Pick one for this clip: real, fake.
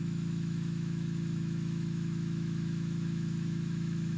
fake